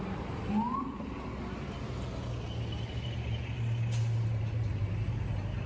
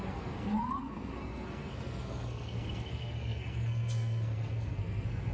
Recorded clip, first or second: first